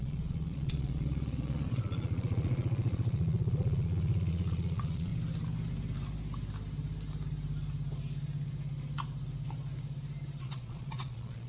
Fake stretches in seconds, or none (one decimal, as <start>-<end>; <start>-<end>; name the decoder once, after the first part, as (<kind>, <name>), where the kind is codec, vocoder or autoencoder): 0.0-5.1 (vocoder, Vocos); 10.4-11.5